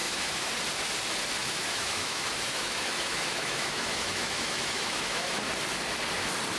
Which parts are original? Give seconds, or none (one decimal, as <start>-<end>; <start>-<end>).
0.5-1.4; 5.4-6.6